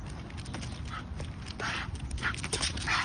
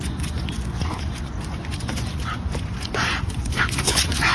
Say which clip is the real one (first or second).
first